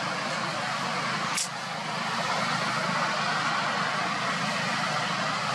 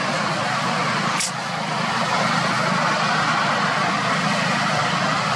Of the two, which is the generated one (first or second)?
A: second